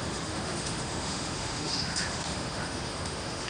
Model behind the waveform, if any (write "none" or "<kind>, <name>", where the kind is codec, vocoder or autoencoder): autoencoder, DAC-VAE